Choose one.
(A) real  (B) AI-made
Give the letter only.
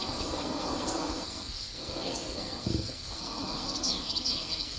B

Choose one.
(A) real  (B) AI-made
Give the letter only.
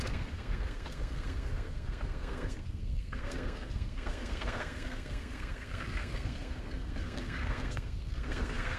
B